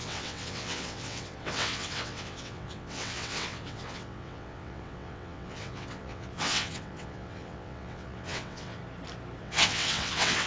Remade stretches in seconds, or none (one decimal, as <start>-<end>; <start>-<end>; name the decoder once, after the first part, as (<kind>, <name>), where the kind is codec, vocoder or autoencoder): 0.0-8.8 (vocoder, WaveNeXt); 9.4-10.5